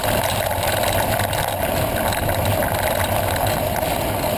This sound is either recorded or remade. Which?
recorded